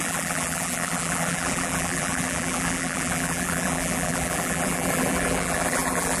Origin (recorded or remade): remade